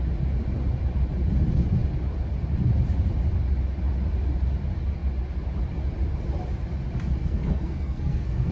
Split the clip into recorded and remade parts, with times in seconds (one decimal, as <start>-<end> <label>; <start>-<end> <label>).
0.0-7.2 recorded; 7.2-8.5 remade